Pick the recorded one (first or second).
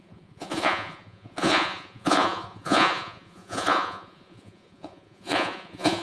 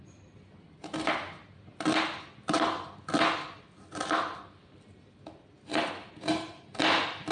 second